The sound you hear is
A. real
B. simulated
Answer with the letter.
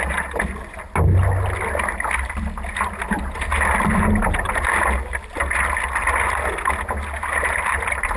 A